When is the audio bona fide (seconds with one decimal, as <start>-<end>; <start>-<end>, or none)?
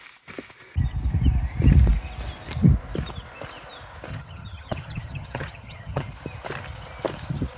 0.0-4.1; 6.1-7.6